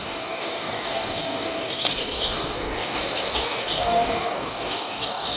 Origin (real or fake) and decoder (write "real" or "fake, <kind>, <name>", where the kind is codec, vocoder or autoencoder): fake, codec, DAC